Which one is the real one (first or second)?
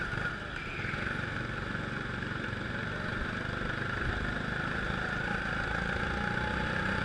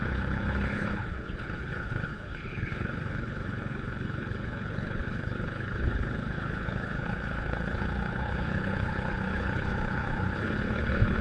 first